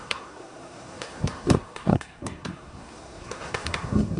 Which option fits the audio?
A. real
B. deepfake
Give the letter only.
B